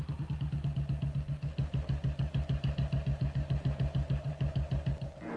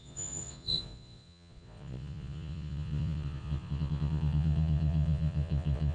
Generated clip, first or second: second